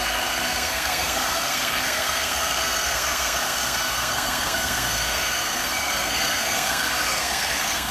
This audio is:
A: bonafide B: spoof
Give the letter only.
B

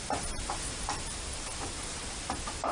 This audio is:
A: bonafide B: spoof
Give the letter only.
A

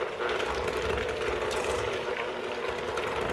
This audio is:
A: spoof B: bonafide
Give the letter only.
B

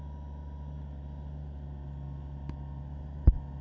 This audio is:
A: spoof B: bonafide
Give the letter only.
B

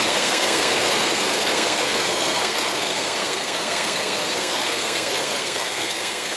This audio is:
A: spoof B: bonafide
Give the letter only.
A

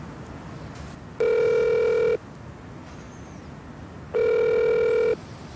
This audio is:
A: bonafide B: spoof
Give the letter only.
A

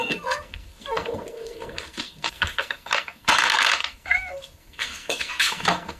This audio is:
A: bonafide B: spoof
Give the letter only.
B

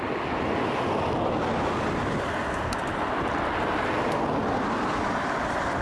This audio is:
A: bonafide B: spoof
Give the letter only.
A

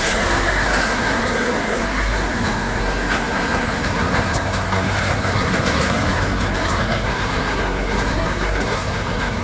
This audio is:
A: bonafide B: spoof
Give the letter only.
B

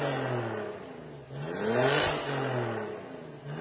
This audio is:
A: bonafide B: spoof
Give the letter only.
A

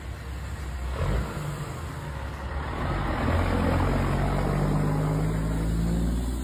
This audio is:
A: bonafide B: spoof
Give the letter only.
A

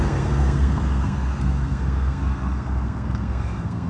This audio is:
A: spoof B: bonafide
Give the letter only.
A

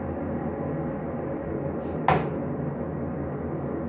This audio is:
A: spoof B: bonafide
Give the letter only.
B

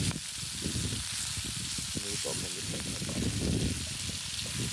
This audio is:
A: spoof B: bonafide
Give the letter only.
B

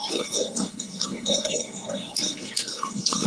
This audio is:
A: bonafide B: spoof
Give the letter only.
B